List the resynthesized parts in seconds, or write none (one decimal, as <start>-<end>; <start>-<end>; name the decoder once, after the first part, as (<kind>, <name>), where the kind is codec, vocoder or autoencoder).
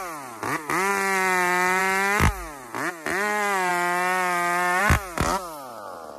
none